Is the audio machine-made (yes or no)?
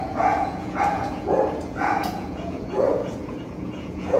yes